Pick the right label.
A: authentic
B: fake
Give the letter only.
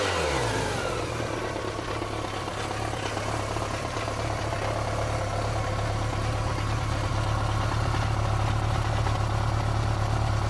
A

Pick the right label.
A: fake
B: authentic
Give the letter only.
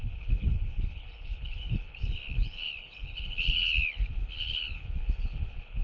A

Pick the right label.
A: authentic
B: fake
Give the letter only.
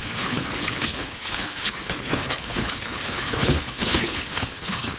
B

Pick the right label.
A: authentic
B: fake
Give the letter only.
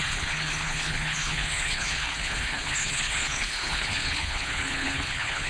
B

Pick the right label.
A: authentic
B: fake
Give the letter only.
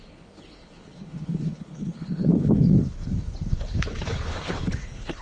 B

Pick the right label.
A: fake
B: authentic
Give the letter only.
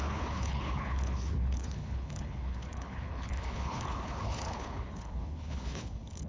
A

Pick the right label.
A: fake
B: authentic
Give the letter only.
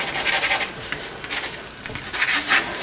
B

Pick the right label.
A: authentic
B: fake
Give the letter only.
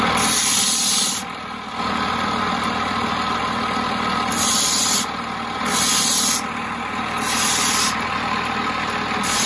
A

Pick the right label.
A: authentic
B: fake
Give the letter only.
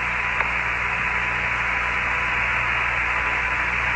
A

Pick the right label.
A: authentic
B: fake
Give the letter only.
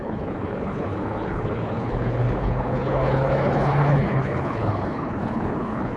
B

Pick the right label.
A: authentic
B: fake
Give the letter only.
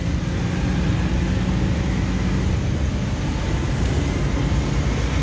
A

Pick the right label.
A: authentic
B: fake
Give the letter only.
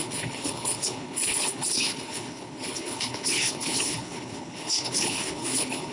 B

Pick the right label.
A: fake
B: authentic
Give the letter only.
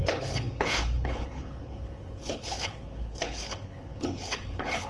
A